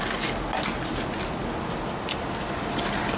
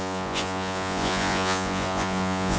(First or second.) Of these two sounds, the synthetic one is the second